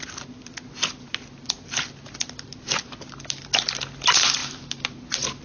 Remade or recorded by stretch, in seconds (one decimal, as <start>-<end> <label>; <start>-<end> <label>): 0.0-5.4 recorded